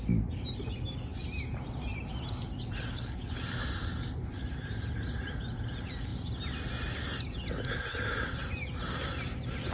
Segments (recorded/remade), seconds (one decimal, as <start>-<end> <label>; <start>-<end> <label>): 0.0-2.9 recorded; 2.9-3.4 remade; 3.4-9.7 recorded